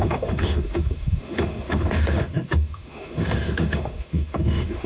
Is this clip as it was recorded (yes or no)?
no